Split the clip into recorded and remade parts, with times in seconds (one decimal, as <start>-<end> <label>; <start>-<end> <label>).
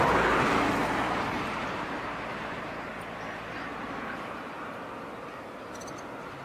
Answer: 0.0-0.8 recorded; 0.8-2.9 remade; 2.9-6.4 recorded